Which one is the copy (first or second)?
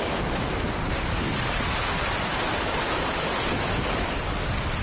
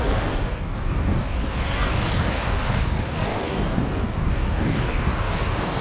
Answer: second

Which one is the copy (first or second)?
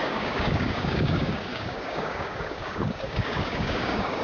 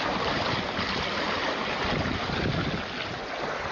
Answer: first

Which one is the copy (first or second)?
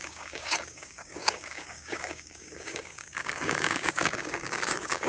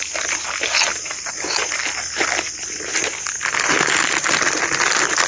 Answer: first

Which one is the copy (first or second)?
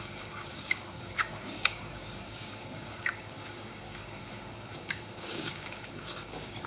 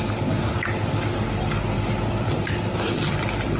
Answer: first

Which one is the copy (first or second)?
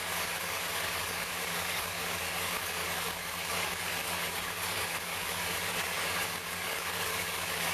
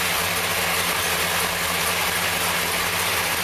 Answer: first